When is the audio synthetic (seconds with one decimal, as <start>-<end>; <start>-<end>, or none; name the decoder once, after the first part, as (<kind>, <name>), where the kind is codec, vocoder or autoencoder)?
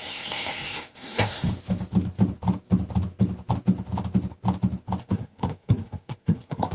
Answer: 0.0-1.5 (codec, SNAC); 5.0-6.7